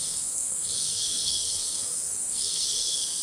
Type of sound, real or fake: fake